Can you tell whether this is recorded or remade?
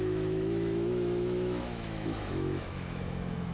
remade